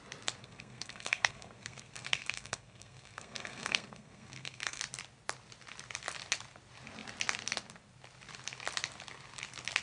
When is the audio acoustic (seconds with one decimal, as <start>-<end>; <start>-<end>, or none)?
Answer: 0.0-0.4; 4.8-9.8